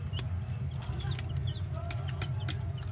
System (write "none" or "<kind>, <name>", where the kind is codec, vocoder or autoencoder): none